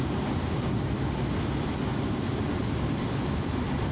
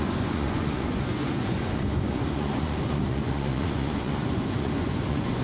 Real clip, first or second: first